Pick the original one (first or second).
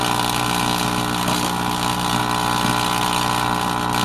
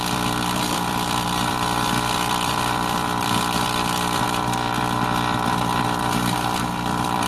first